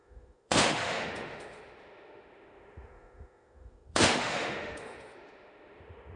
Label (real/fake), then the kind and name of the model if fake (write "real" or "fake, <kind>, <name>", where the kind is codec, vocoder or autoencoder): fake, autoencoder, DAC-VAE